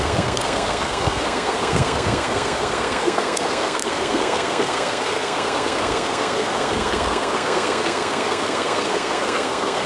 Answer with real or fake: fake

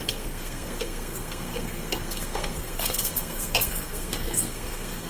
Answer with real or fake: fake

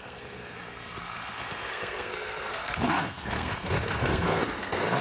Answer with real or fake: fake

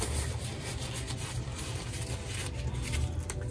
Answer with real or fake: real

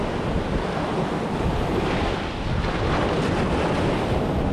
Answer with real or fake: real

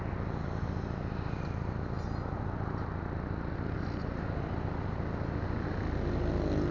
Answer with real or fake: real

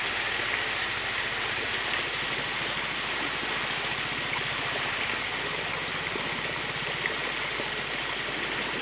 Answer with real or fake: real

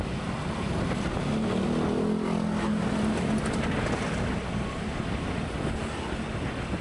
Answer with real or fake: real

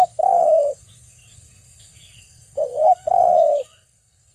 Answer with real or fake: fake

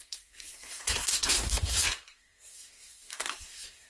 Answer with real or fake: fake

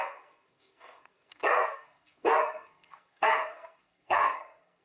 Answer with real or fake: fake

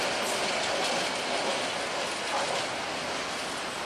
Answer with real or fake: real